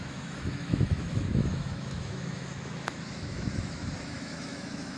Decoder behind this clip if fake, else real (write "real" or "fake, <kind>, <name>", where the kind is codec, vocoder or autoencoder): fake, autoencoder, DAC-VAE